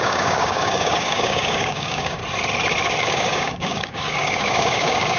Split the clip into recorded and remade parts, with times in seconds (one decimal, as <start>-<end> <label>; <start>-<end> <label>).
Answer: 0.0-2.2 remade; 2.2-3.0 recorded; 3.0-5.2 remade